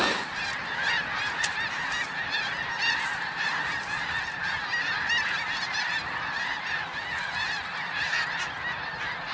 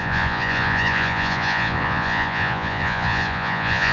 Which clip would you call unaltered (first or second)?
first